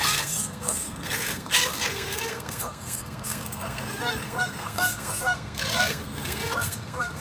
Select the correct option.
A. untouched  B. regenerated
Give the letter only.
B